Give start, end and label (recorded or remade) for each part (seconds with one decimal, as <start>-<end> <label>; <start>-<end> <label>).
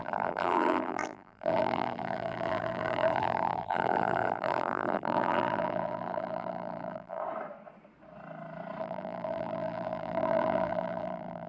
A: 0.0-7.2 remade; 7.2-8.8 recorded; 8.8-11.5 remade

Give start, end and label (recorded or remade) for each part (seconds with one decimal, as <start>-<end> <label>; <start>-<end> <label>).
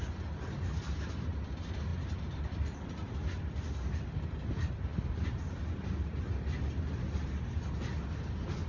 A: 0.0-8.7 recorded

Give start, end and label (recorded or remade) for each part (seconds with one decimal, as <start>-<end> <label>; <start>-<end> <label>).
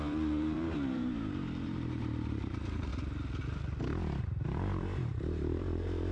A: 0.0-2.9 remade; 2.9-4.2 recorded; 4.2-6.1 remade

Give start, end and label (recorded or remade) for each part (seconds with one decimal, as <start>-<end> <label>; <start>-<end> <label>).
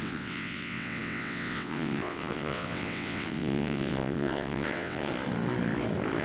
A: 0.0-5.1 remade; 5.1-6.2 recorded